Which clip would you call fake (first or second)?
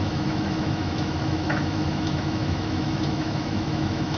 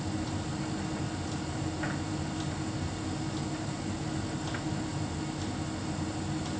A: first